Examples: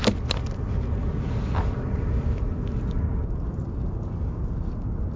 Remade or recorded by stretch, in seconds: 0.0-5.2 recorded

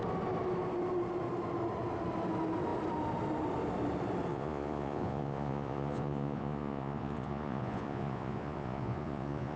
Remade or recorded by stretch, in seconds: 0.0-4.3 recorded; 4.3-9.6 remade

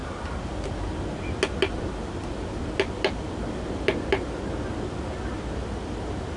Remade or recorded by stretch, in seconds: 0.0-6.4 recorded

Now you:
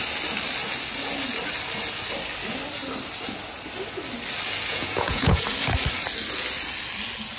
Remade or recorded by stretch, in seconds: 0.0-4.7 recorded; 4.7-5.4 remade; 5.4-7.4 recorded